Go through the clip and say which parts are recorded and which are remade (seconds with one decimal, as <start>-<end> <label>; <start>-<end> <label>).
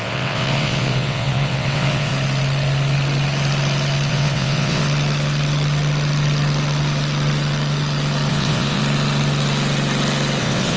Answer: 0.0-2.1 remade; 2.1-4.1 recorded; 4.1-4.8 remade; 4.8-8.3 recorded; 8.3-8.8 remade; 8.8-10.4 recorded; 10.4-10.8 remade